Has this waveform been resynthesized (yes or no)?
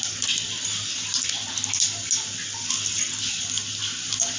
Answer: no